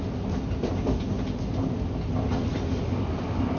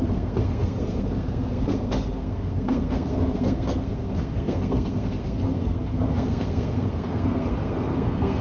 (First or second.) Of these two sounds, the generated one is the second